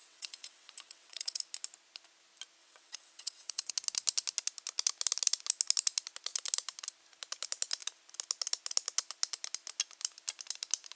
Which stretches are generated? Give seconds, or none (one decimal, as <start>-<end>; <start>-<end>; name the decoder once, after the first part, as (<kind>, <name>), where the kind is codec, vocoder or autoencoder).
0.0-1.4 (vocoder, WaveNeXt); 2.6-3.7